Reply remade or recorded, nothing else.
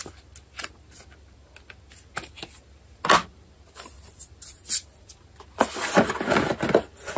recorded